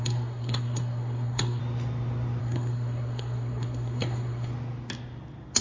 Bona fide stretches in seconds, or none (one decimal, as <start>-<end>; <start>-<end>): 1.6-2.4; 4.5-5.6